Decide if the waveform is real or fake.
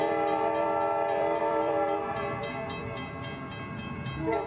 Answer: fake